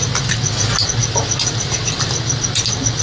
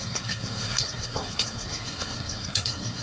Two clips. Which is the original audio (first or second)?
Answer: first